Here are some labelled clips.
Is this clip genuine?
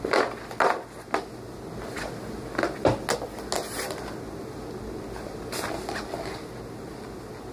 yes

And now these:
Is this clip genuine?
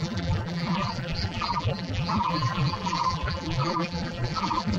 no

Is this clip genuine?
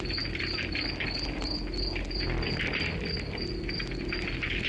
yes